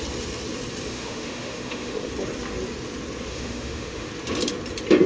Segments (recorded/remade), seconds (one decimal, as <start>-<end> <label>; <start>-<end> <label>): 0.0-0.9 recorded; 0.9-2.1 remade; 2.1-3.3 recorded; 3.3-4.1 remade; 4.1-5.1 recorded